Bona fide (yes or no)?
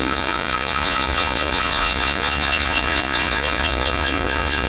no